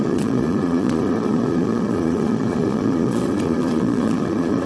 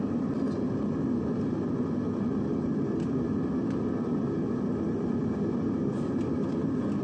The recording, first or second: second